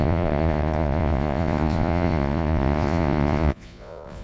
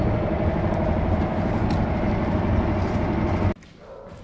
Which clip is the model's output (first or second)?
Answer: first